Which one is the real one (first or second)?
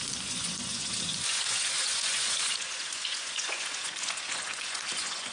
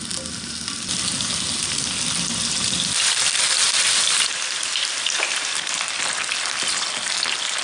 second